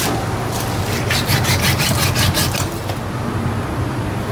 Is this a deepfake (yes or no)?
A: no